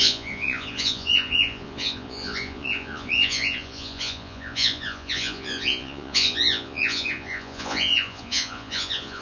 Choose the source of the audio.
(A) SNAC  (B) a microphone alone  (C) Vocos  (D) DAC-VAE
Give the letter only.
C